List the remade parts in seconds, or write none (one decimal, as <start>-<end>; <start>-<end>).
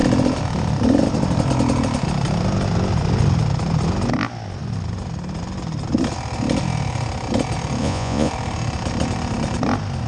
7.8-8.3